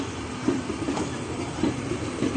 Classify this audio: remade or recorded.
recorded